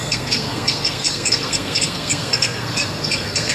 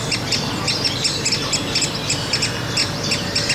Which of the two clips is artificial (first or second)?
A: first